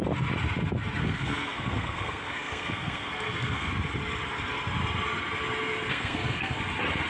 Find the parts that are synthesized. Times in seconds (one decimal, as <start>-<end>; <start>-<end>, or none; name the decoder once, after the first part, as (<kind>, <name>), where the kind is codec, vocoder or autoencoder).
1.0-3.7 (codec, SNAC); 5.9-6.6